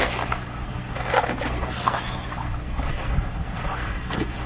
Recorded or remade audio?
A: remade